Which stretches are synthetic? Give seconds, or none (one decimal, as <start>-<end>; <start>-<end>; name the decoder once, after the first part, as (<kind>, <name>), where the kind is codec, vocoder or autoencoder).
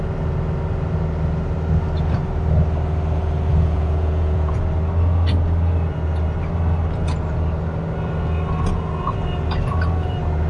3.5-4.6 (vocoder, Vocos)